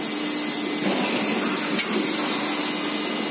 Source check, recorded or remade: recorded